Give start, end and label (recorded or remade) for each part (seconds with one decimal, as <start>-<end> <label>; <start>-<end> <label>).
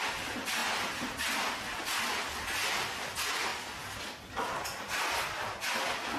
0.0-6.2 recorded